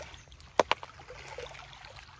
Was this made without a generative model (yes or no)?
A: yes